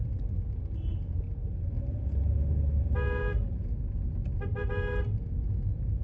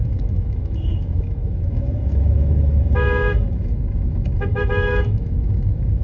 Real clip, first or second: first